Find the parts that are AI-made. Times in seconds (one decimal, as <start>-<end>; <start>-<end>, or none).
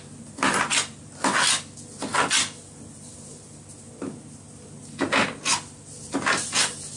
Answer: none